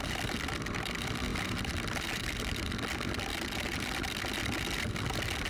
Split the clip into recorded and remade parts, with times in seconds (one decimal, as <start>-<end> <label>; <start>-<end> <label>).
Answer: 0.0-5.5 remade